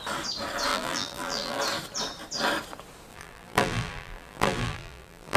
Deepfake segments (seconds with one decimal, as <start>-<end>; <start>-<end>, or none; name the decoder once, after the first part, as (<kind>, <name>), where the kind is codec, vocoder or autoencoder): 0.7-1.6 (vocoder, BigVGAN v2); 3.1-5.4